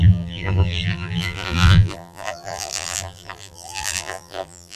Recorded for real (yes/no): no